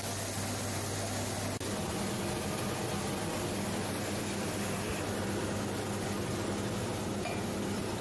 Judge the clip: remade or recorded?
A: recorded